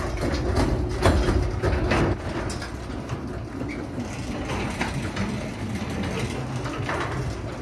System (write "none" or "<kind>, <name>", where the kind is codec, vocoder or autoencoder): none